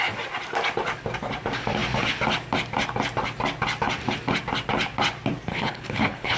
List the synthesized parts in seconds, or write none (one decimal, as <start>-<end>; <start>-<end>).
5.5-6.4